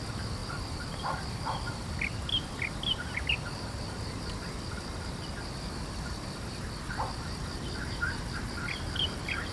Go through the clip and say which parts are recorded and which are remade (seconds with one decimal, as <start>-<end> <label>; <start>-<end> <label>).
0.0-9.5 recorded